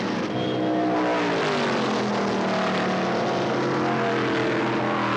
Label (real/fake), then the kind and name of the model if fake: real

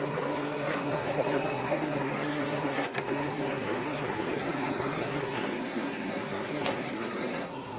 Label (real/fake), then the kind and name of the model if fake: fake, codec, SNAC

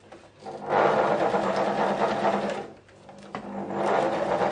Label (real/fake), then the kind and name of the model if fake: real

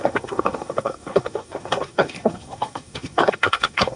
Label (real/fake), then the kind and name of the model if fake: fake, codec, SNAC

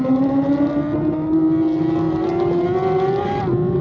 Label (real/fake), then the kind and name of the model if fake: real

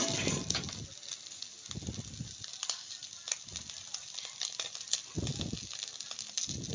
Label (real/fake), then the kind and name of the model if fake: real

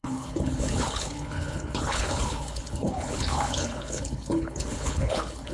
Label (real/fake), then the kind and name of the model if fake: fake, codec, HILCodec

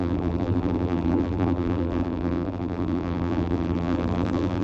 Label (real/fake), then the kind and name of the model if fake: fake, vocoder, BigVGAN v2